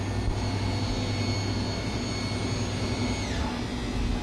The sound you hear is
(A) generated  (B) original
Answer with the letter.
B